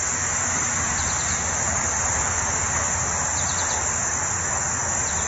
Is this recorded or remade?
recorded